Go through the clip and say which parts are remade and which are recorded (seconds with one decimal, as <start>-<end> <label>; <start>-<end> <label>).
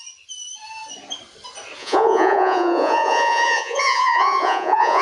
0.0-1.8 recorded; 1.8-5.0 remade